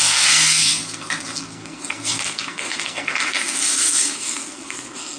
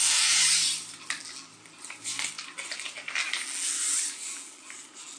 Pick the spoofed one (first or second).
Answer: first